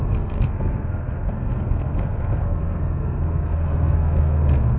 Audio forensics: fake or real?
fake